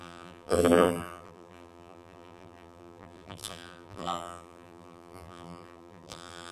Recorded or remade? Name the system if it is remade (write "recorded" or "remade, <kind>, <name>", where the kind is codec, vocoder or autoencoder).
remade, vocoder, BigVGAN v2